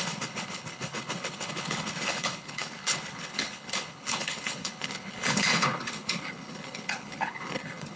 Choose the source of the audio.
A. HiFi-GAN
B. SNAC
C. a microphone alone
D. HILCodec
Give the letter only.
D